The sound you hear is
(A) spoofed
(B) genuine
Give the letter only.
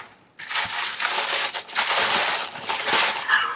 B